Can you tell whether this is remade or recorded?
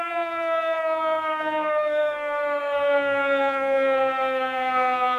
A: remade